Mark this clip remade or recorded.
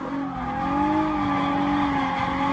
recorded